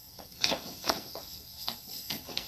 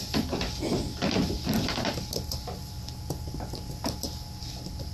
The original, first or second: second